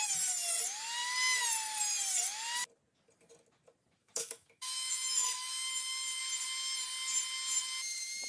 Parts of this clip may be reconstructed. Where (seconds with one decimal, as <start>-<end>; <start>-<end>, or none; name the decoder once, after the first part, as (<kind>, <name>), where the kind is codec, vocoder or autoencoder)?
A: 4.0-6.2 (autoencoder, DAC-VAE)